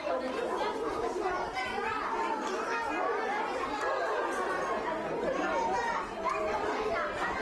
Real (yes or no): yes